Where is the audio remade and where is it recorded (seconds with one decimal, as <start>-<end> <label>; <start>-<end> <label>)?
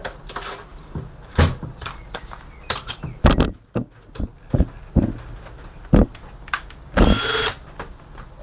0.0-8.4 recorded